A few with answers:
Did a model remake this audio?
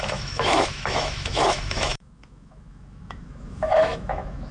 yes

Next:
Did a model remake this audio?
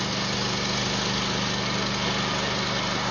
no